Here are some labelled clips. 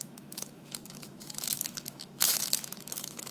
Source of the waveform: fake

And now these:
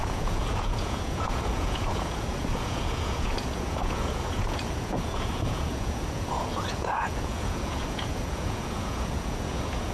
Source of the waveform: fake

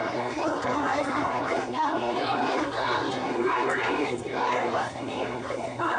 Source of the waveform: fake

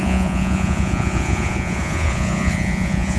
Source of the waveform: fake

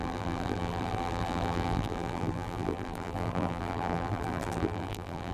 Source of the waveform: fake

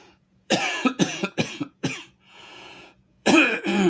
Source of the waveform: fake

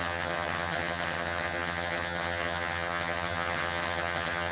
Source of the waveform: fake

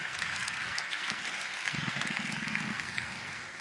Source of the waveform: fake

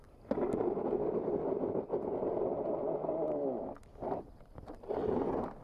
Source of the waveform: real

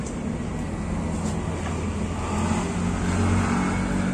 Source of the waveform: real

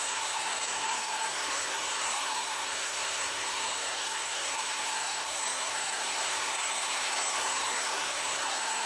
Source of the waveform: fake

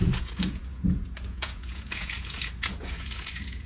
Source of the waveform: fake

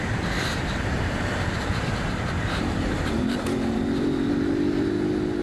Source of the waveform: fake